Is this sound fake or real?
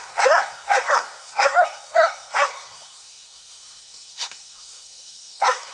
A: fake